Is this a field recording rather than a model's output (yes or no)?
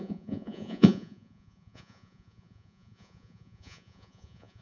no